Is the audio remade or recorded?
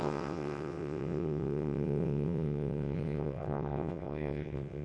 remade